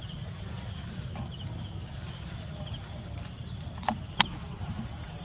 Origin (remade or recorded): recorded